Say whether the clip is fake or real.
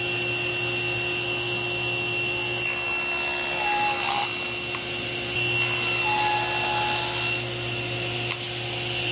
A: real